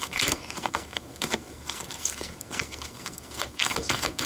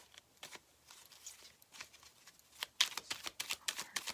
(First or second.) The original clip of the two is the second